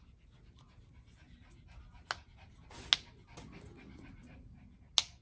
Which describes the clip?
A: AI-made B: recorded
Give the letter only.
B